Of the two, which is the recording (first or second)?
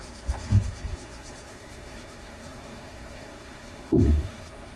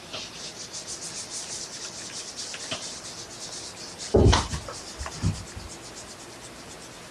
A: second